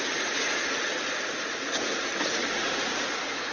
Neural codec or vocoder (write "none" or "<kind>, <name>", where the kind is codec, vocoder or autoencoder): vocoder, Vocos